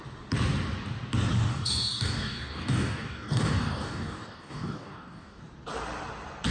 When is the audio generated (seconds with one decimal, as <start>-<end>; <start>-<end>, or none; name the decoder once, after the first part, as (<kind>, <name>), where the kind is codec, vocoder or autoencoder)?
1.5-5.4 (codec, DAC)